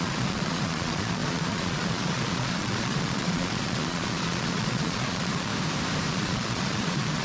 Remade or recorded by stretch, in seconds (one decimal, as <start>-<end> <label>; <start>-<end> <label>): 0.0-5.5 remade; 5.5-6.1 recorded; 6.1-7.2 remade